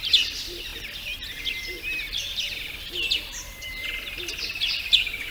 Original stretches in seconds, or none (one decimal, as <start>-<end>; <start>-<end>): 3.9-4.8